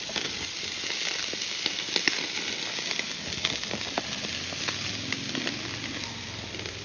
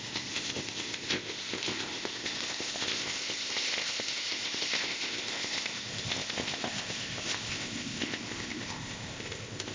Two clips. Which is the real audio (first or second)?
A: first